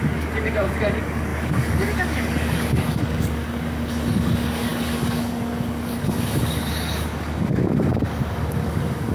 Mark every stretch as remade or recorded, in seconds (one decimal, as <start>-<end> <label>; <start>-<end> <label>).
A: 0.0-9.1 remade